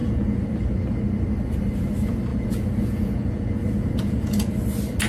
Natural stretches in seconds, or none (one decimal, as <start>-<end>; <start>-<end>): 0.6-2.3; 4.5-5.1